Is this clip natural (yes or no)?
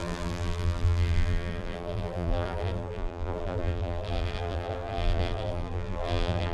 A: no